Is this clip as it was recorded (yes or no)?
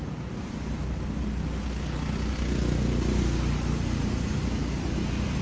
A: yes